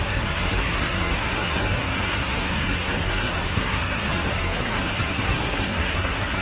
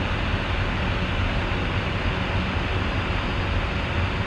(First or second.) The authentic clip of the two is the second